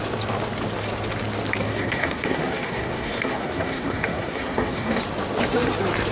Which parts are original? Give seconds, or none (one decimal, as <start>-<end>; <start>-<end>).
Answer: 0.0-1.6; 5.0-6.1